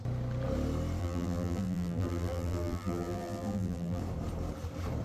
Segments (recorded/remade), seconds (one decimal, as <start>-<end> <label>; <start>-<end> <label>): 0.0-1.0 recorded; 1.0-4.0 remade; 4.0-5.0 recorded